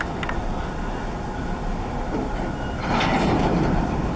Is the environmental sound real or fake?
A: real